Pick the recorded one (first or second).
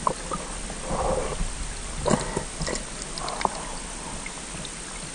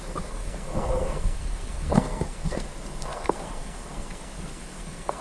first